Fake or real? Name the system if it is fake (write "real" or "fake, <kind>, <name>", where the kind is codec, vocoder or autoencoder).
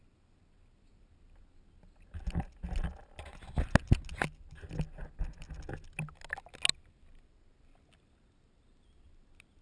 real